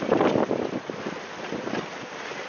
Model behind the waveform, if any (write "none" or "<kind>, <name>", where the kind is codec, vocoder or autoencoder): none